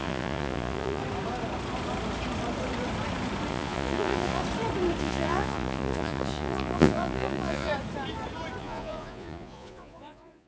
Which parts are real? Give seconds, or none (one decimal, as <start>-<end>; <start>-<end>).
1.0-3.5; 4.4-5.0; 7.7-8.6